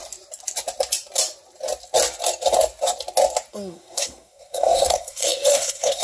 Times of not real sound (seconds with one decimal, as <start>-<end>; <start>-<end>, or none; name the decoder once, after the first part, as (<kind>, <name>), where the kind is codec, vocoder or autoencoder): 3.5-6.0 (codec, SNAC)